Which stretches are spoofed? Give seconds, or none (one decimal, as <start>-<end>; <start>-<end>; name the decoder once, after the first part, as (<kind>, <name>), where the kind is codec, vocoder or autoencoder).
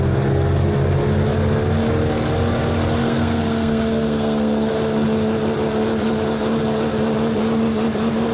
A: 3.0-4.7 (codec, SNAC)